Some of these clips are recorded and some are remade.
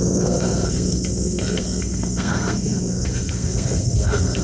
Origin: remade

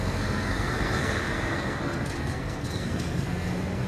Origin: remade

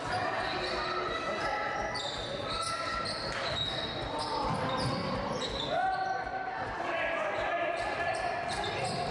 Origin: recorded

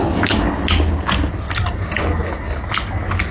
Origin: recorded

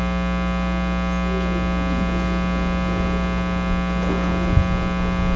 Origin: recorded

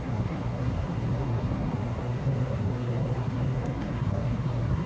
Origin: remade